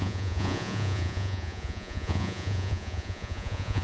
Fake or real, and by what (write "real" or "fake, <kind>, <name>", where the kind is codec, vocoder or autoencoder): fake, vocoder, Vocos